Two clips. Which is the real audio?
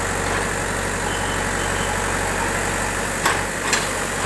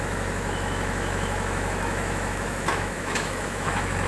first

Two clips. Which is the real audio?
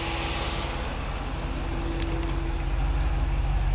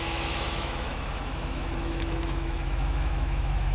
first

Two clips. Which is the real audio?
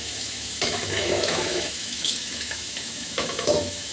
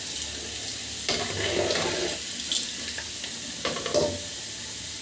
second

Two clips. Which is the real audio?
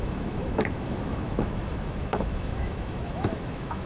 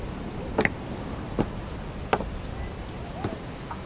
second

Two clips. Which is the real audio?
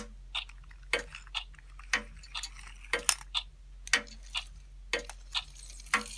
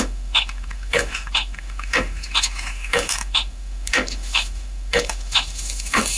first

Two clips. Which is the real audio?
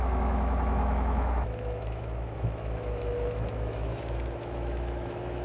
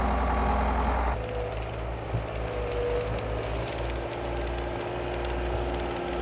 second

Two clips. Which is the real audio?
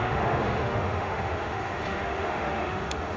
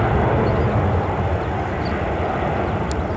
second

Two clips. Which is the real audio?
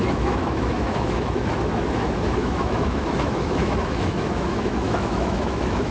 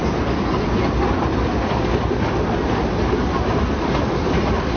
second